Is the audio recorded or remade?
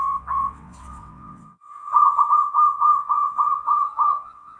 remade